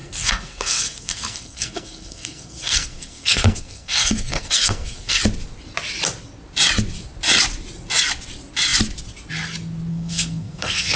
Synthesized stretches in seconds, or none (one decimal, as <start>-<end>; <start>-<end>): 0.0-5.2; 9.9-11.0